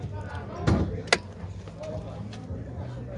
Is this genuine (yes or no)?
yes